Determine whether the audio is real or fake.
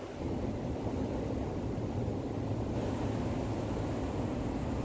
real